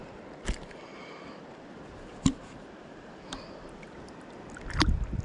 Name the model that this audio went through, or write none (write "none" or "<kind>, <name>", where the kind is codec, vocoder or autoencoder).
vocoder, BigVGAN v2